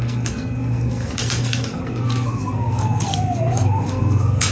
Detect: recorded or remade remade